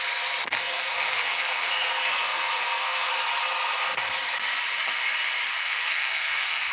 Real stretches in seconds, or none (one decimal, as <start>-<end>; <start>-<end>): 0.0-0.5; 3.1-5.6